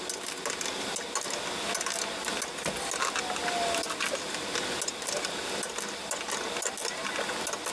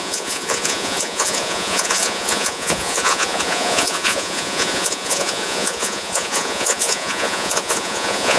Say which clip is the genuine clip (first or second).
first